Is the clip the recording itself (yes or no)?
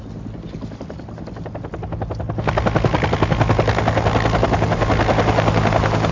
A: yes